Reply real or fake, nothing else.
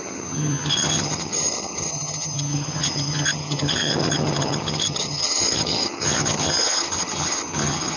fake